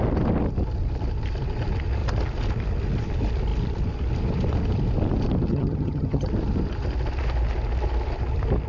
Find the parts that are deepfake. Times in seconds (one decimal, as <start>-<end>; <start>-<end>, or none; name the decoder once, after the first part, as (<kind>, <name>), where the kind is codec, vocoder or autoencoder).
5.5-6.3 (vocoder, HiFi-GAN)